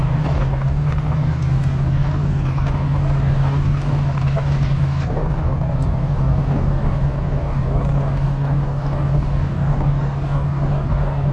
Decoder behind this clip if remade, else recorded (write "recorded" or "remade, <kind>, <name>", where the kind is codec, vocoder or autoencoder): remade, codec, DAC